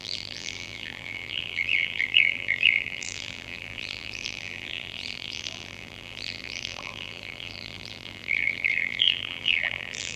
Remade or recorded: remade